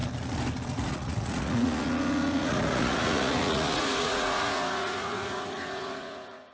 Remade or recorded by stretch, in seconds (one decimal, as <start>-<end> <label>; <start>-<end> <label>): 0.0-0.7 recorded; 0.7-6.5 remade